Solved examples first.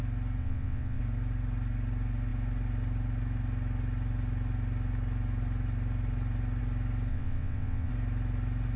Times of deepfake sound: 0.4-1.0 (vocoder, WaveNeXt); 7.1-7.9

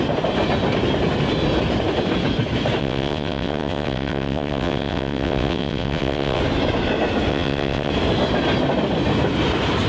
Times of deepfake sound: 2.8-6.4 (vocoder, WaveNeXt); 7.3-7.9

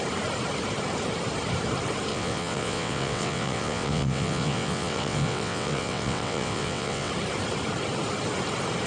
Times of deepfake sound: 2.1-7.1 (vocoder, WaveNeXt)

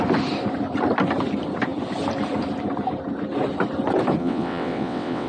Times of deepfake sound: 4.2-5.3 (vocoder, WaveNeXt)

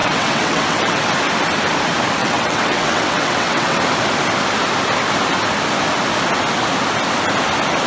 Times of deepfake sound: 0.0-1.1 (vocoder, WaveNeXt); 2.2-3.8

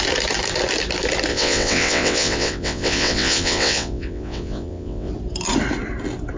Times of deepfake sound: 1.3-5.1 (vocoder, WaveNeXt)

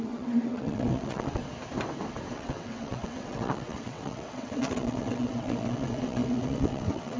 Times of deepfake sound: 0.0-1.4 (vocoder, WaveNeXt); 2.3-7.2

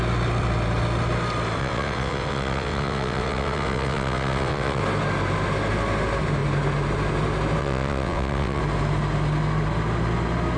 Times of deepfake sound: 1.6-4.8 (vocoder, WaveNeXt); 7.6-8.6